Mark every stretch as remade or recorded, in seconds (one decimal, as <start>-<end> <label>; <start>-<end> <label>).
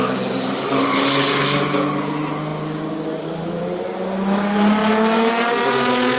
0.0-6.2 recorded